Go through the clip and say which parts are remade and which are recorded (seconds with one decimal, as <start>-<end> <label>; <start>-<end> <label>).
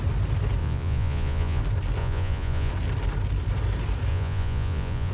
0.0-0.6 recorded; 0.6-1.6 remade; 1.6-2.0 recorded; 2.0-2.7 remade; 2.7-4.1 recorded; 4.1-5.1 remade